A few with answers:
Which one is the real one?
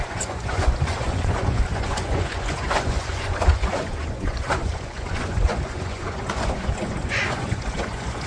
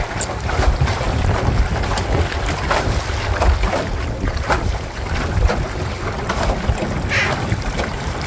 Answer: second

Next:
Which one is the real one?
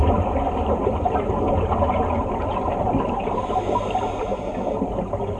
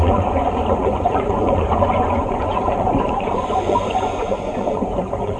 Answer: first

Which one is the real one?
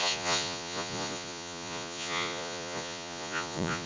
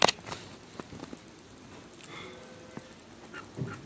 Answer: second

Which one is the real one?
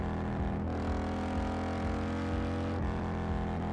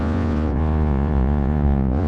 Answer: first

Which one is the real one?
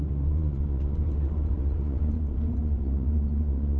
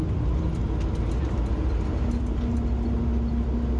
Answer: second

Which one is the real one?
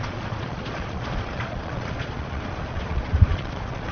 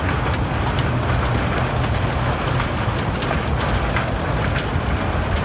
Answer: second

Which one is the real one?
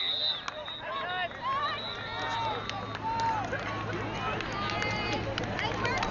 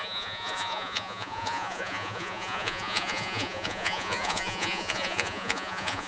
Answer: first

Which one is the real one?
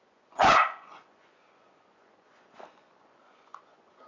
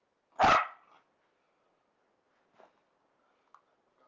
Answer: second